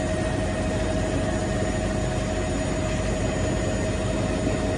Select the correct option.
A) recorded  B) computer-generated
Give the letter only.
A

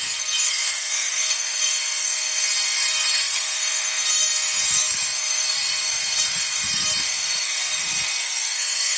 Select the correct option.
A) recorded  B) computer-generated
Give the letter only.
B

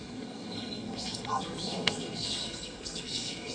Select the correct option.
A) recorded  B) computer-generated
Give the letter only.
B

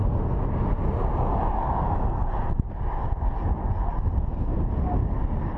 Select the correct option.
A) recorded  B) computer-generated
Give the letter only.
A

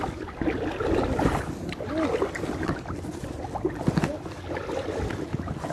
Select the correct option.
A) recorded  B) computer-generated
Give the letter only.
A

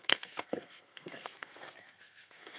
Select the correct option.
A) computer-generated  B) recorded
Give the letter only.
A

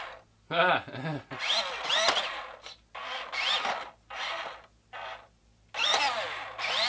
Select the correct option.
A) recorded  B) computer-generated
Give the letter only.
A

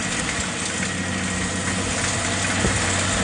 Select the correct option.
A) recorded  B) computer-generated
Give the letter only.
A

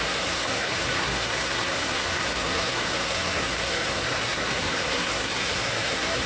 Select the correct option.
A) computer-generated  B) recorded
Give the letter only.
A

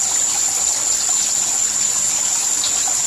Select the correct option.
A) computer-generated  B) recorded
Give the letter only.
B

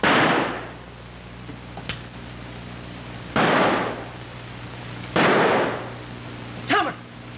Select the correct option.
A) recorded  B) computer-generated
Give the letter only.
A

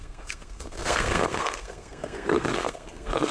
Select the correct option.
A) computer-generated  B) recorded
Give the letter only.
A